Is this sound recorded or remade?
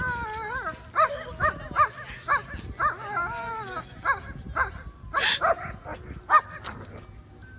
recorded